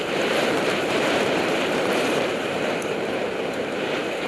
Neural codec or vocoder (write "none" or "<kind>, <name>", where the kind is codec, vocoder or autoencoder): vocoder, BigVGAN v2